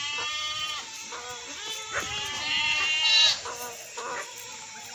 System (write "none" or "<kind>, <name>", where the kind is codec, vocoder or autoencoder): none